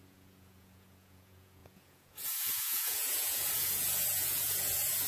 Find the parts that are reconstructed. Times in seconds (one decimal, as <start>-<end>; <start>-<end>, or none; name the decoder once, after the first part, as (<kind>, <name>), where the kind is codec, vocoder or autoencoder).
0.0-5.1 (vocoder, Vocos)